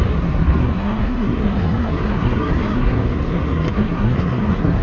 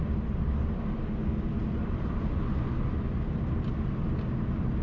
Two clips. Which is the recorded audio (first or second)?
second